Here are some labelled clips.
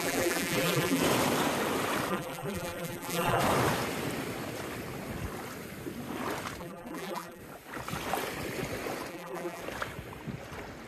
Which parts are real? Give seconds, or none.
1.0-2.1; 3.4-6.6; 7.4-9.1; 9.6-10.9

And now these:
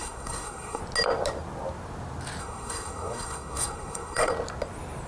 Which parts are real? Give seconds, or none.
0.8-2.4; 4.3-5.1